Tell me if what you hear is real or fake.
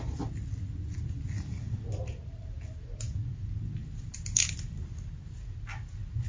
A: real